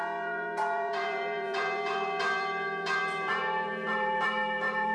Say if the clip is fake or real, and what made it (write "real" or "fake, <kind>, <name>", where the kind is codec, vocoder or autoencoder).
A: fake, vocoder, BigVGAN v2